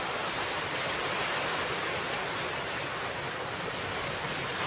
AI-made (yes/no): no